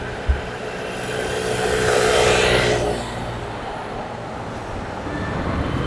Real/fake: real